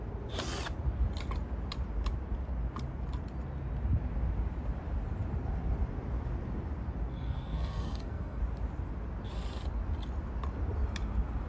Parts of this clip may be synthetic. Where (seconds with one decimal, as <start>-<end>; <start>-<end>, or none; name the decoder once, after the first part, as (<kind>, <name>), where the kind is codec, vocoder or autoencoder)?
7.1-8.4 (codec, SNAC)

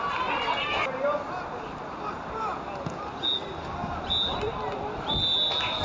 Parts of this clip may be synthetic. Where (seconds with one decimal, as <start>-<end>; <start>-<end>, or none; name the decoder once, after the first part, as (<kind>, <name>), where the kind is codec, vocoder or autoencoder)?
none

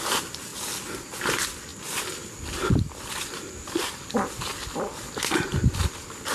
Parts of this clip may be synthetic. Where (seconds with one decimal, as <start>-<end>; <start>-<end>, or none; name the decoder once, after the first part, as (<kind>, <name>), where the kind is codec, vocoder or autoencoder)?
none

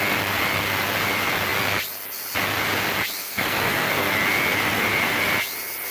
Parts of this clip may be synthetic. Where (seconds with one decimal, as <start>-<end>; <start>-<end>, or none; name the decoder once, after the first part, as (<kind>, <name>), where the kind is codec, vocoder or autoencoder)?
3.2-4.1 (codec, SNAC)

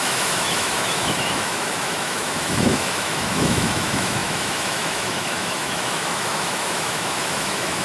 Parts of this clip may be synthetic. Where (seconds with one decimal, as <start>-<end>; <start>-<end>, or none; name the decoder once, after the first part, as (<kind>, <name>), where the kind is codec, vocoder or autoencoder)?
0.0-7.8 (autoencoder, DAC-VAE)

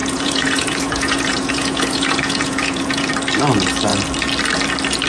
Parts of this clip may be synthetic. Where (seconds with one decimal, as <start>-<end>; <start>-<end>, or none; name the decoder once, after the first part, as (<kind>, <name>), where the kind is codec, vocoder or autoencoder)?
0.0-3.1 (vocoder, Vocos)